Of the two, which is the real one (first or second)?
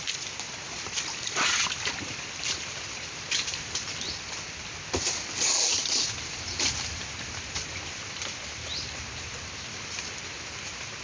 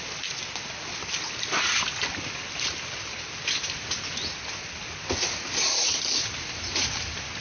second